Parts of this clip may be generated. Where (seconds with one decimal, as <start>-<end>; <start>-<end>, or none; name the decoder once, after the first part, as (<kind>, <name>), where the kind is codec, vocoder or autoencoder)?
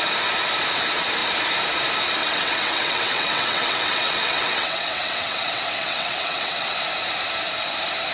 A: 2.2-6.8 (vocoder, WaveNeXt)